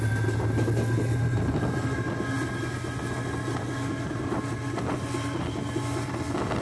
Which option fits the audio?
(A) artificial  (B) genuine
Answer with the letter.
B